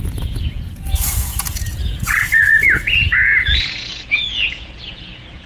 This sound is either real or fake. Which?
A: fake